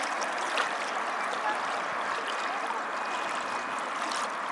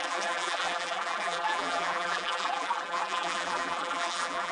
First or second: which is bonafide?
first